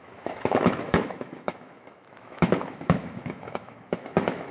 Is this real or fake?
fake